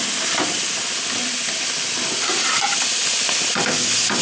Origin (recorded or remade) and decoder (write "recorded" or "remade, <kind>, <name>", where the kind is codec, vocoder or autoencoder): recorded